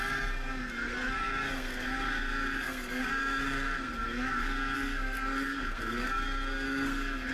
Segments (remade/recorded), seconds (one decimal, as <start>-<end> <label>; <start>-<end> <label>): 0.0-7.3 remade